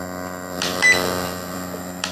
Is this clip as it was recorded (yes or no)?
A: no